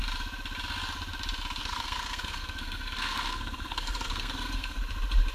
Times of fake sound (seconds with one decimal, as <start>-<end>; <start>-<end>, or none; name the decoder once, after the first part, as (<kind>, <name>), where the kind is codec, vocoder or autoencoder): 1.6-4.8 (codec, SNAC)